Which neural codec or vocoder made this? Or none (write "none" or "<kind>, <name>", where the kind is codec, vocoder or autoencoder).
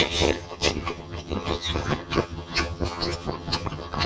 vocoder, HiFi-GAN